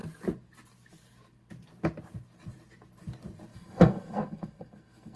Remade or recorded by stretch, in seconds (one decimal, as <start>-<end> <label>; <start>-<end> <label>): 0.0-3.5 recorded; 3.5-5.2 remade